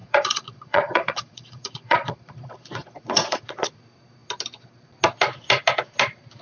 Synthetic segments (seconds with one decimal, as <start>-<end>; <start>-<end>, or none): 0.0-3.8